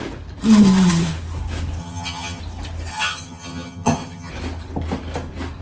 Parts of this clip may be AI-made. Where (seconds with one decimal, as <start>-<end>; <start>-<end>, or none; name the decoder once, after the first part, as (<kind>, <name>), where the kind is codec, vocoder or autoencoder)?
1.8-2.4 (vocoder, HiFi-GAN); 2.9-4.3